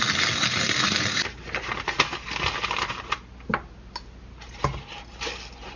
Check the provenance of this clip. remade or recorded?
recorded